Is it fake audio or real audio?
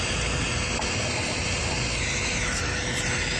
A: real